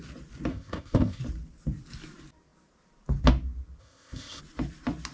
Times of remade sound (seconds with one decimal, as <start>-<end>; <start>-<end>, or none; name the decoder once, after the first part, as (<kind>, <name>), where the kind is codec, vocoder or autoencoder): 0.5-1.2 (codec, ZipCodec); 3.8-4.4